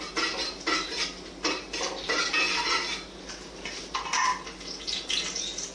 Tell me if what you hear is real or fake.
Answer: real